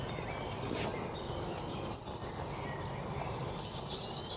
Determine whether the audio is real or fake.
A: real